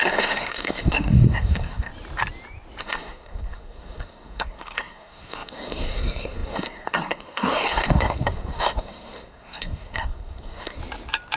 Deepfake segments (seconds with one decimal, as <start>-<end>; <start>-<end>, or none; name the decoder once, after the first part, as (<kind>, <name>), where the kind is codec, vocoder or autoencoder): 0.0-1.9 (codec, SNAC); 2.8-10.8